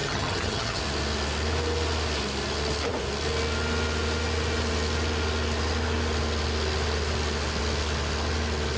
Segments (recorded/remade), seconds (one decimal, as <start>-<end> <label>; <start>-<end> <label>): 0.0-0.8 remade; 0.8-8.8 recorded